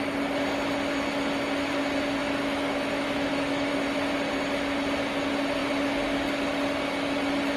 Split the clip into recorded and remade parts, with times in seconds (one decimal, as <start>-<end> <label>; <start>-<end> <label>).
0.0-2.2 recorded; 2.2-3.7 remade; 3.7-7.6 recorded